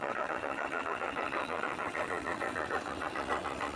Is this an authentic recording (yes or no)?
no